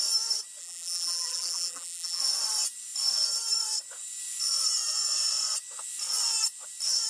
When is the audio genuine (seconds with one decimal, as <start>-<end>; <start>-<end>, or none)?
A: 0.0-0.6; 2.2-7.1